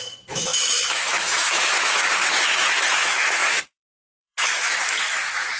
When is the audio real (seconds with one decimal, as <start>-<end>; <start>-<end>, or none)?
none